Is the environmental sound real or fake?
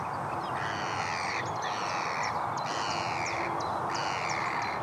real